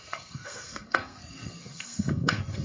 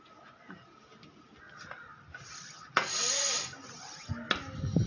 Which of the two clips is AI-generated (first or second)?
first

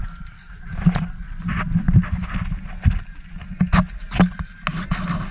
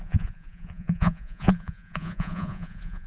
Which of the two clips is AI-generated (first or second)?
second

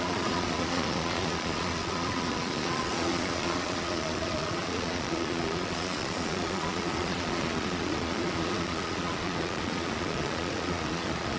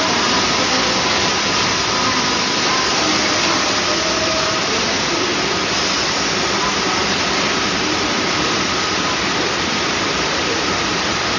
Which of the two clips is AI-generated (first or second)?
first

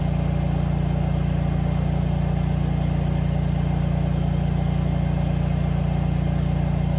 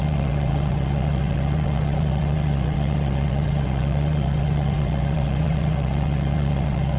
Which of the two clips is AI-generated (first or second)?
second